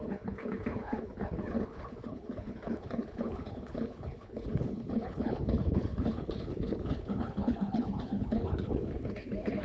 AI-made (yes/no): yes